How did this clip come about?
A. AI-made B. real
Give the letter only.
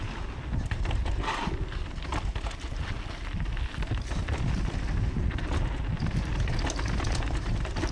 B